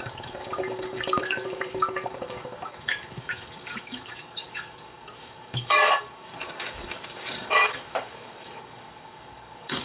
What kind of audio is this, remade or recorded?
remade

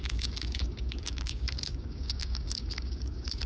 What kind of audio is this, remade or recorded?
remade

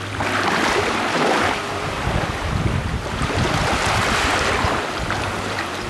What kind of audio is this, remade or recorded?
recorded